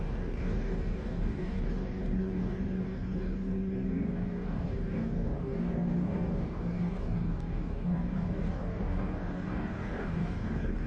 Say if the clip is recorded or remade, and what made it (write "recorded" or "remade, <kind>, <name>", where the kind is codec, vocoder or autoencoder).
remade, codec, DAC